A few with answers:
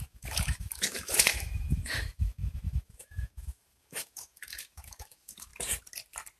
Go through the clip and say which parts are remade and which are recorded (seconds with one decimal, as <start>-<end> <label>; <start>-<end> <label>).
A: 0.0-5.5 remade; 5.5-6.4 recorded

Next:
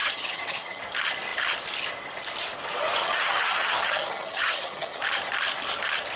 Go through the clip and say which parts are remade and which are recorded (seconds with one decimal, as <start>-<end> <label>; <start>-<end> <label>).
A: 0.0-0.8 remade; 0.8-3.0 recorded; 3.0-5.0 remade; 5.0-6.2 recorded

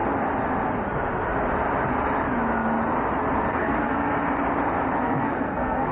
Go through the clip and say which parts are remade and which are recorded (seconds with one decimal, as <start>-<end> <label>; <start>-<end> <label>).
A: 0.0-3.5 recorded; 3.5-4.1 remade; 4.1-5.0 recorded; 5.0-5.9 remade

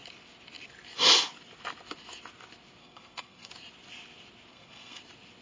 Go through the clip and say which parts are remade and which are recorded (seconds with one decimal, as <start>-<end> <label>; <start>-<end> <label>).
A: 0.0-2.8 recorded; 2.8-3.5 remade; 3.5-4.5 recorded; 4.5-5.0 remade; 5.0-5.4 recorded

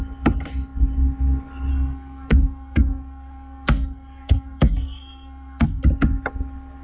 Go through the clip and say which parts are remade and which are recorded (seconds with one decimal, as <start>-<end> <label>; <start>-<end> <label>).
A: 0.0-1.7 recorded; 1.7-5.8 remade; 5.8-6.8 recorded

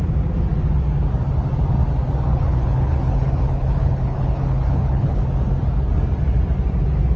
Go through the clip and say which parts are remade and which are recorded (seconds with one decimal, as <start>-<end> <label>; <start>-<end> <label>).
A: 0.0-2.3 recorded; 2.3-5.2 remade; 5.2-7.2 recorded

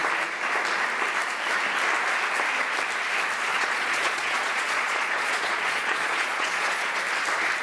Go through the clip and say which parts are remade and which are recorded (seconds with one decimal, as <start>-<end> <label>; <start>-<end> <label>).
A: 0.0-3.5 recorded; 3.5-7.0 remade; 7.0-7.6 recorded

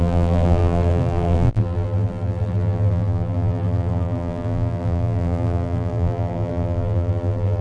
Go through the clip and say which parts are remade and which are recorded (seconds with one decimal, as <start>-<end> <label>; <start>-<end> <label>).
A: 0.0-7.6 remade